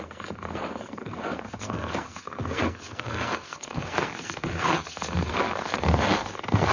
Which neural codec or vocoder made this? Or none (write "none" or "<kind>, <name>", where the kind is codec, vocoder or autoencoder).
codec, SNAC